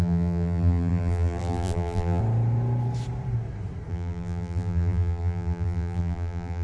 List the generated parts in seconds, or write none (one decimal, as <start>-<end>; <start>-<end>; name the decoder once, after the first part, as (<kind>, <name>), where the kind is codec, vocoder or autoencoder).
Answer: 0.0-2.2 (vocoder, BigVGAN v2); 3.9-6.6